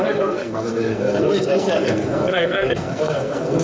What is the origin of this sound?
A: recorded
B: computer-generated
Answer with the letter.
B